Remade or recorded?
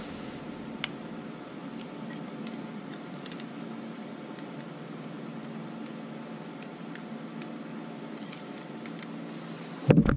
recorded